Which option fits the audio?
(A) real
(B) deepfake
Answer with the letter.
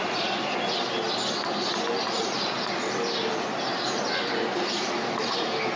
A